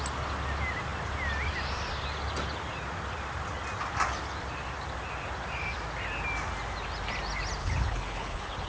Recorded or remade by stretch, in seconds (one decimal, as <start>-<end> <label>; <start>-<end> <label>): 0.0-7.6 recorded; 7.6-8.7 remade